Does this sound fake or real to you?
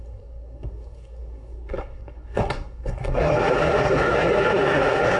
fake